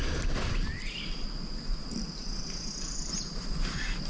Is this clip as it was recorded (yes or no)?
yes